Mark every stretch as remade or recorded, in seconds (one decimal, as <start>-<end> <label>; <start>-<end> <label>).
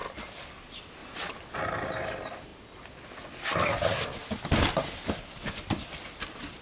0.0-6.6 recorded